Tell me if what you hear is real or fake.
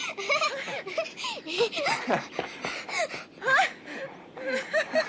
real